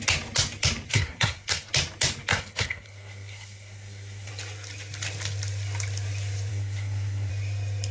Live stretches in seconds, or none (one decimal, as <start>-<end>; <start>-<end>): 0.0-0.9; 1.7-2.3; 4.3-6.5; 7.3-7.9